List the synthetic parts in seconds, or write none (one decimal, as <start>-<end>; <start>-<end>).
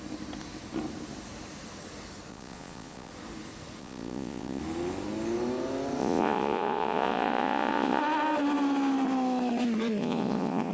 2.3-3.1; 3.8-4.6; 6.0-8.0; 10.0-10.7